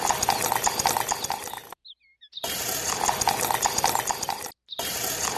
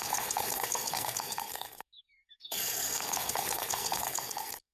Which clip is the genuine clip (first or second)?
first